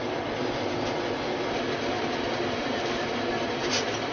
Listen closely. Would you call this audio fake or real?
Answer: real